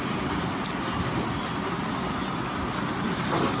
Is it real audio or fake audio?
real